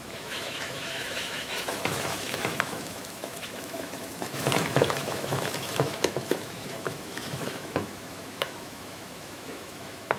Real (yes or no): no